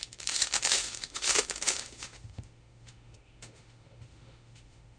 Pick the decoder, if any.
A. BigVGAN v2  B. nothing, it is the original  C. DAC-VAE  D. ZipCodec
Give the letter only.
C